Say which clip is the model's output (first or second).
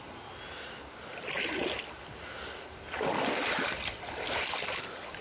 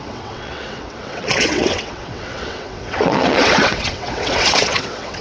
second